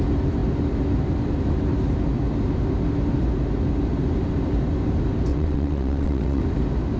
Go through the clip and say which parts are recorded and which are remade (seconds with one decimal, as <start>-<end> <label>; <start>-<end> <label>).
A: 0.0-5.3 recorded; 5.3-6.4 remade; 6.4-7.0 recorded